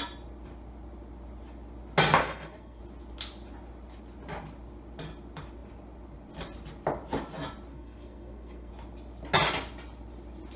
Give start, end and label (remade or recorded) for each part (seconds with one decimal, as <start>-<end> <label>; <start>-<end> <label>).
0.0-2.2 recorded; 2.2-2.8 remade; 2.8-7.7 recorded; 7.7-8.7 remade; 8.7-10.6 recorded